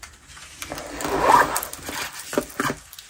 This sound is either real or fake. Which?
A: real